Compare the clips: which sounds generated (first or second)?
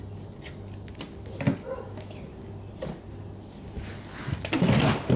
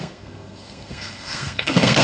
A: second